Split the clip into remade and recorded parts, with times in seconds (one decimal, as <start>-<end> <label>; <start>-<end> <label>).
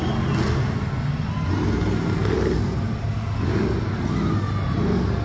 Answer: 0.0-5.2 recorded